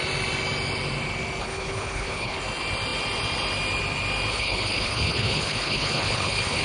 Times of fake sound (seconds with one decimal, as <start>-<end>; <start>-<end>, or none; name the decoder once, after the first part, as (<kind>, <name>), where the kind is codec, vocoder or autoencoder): 1.4-2.4 (codec, HILCodec); 4.3-6.6